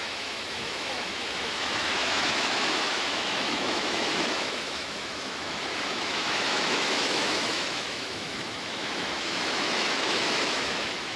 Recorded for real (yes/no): no